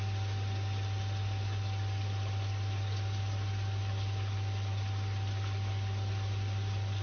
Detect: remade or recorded recorded